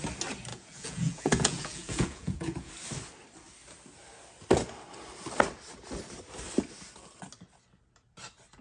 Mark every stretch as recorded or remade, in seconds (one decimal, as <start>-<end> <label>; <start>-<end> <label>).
0.0-0.5 recorded; 0.5-2.7 remade; 2.7-8.6 recorded